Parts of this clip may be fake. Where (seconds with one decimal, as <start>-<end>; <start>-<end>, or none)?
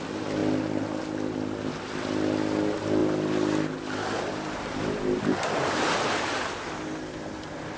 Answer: none